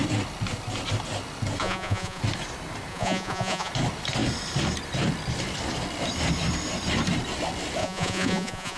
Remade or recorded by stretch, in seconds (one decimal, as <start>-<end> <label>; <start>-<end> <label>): 0.0-1.6 recorded; 1.6-2.2 remade; 2.2-2.9 recorded; 2.9-3.7 remade; 3.7-7.8 recorded; 7.8-8.8 remade